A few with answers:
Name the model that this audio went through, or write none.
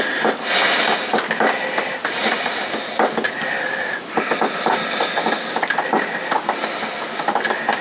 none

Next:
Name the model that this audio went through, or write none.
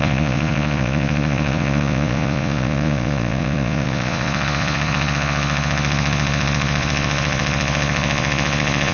vocoder, Vocos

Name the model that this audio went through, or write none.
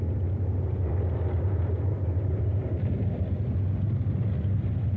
none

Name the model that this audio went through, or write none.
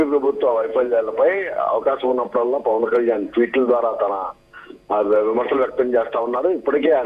vocoder, Vocos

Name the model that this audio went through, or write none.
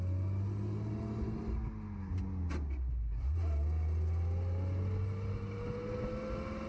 none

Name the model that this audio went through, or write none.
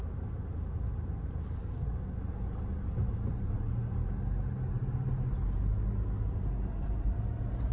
none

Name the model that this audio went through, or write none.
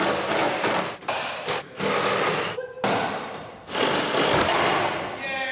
none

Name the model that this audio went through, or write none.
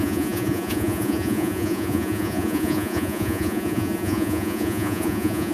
vocoder, Vocos